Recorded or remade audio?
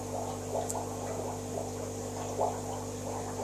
recorded